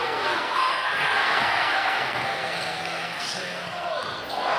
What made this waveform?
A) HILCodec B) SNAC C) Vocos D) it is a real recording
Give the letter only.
B